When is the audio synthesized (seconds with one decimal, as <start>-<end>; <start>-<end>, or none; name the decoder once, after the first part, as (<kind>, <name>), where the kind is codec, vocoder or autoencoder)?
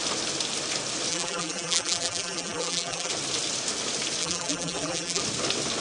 1.1-3.1 (vocoder, BigVGAN v2); 4.2-5.2